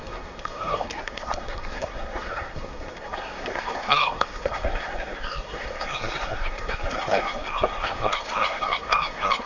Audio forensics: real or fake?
fake